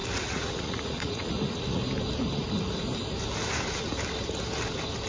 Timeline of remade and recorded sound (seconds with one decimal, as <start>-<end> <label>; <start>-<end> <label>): 0.0-1.8 remade; 1.8-5.1 recorded